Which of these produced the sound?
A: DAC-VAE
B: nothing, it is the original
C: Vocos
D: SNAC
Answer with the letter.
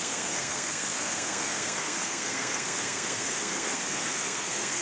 D